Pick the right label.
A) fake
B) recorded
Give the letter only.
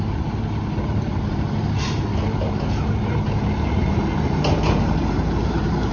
A